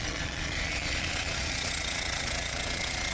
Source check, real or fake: fake